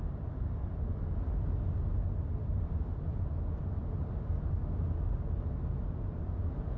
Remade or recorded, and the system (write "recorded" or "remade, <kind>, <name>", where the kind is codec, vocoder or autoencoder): recorded